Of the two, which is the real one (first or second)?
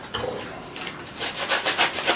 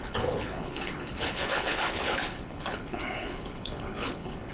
first